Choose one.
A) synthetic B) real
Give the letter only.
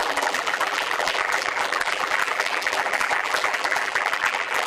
A